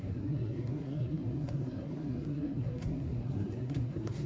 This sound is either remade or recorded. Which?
remade